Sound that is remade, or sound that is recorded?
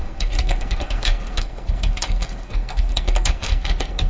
remade